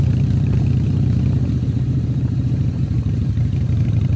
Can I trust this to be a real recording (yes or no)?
no